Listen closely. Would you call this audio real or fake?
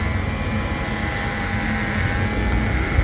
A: real